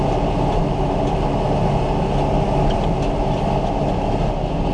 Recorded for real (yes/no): yes